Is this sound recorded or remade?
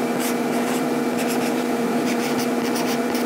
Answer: remade